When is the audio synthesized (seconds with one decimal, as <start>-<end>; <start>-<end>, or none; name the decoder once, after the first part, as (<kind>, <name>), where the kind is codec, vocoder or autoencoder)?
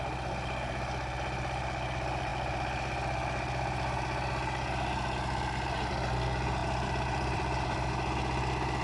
6.6-7.9 (vocoder, BigVGAN v2)